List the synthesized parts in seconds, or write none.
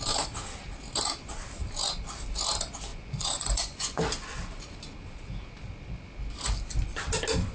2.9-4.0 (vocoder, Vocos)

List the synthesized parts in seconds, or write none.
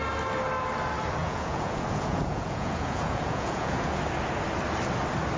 1.2-4.0 (vocoder, Vocos)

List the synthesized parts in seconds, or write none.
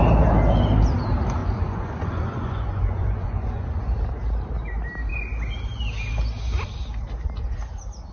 1.4-3.8 (vocoder, Vocos)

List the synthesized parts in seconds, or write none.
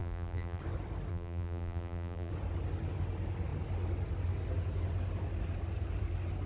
0.0-0.6 (vocoder, BigVGAN v2); 1.1-2.3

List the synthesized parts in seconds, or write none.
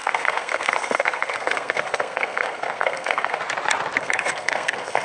0.0-3.4 (codec, SNAC); 4.0-5.0